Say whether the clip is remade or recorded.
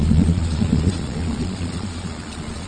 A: remade